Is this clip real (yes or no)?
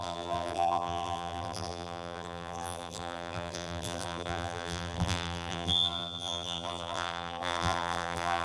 no